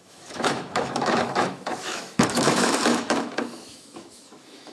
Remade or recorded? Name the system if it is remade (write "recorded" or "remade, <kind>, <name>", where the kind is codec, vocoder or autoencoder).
remade, autoencoder, DAC-VAE